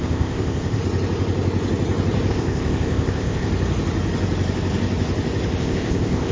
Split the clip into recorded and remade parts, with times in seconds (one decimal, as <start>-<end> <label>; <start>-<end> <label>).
0.0-0.8 remade; 0.8-2.3 recorded; 2.3-3.5 remade; 3.5-5.6 recorded; 5.6-6.3 remade